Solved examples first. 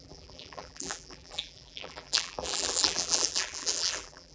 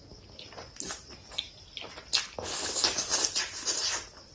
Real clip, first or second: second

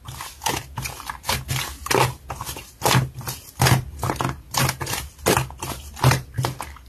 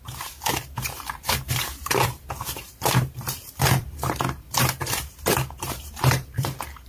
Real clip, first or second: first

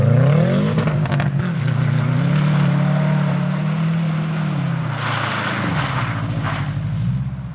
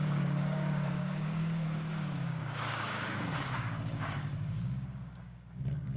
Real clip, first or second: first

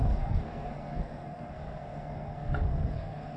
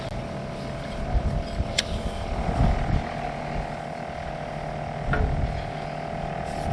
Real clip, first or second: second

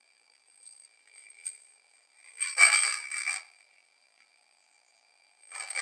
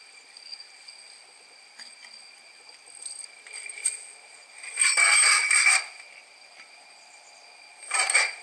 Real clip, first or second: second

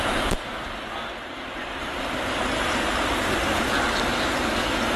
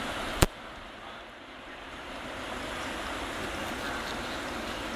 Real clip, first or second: first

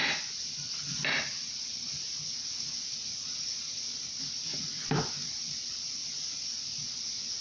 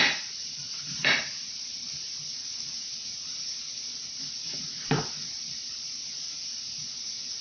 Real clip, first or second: first